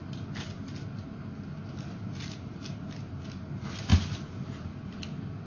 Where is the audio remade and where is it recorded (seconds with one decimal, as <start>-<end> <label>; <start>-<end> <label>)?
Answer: 0.0-3.9 recorded; 3.9-5.0 remade; 5.0-5.5 recorded